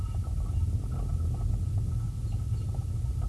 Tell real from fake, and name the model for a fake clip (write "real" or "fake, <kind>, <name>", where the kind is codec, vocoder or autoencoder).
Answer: real